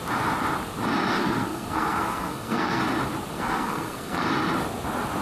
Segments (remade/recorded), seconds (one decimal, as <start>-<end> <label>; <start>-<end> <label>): 0.0-1.1 recorded; 1.1-2.8 remade; 2.8-3.3 recorded; 3.3-4.3 remade; 4.3-5.2 recorded